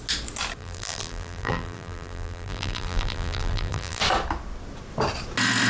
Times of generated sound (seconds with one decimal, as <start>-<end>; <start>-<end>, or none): 0.6-4.0